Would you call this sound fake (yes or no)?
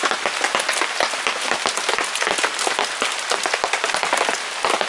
no